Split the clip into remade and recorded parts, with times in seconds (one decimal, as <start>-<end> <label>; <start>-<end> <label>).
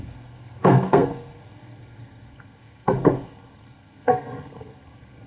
0.0-5.3 remade